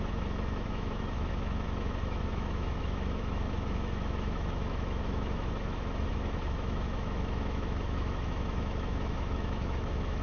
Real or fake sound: fake